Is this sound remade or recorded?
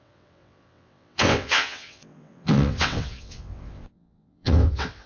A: remade